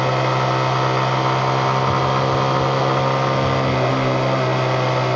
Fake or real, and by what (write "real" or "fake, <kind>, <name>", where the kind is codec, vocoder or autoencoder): real